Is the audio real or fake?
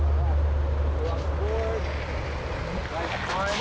real